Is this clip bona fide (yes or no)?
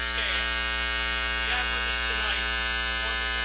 yes